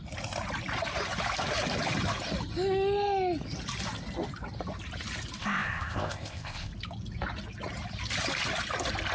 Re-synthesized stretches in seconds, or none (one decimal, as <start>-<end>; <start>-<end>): 5.4-6.7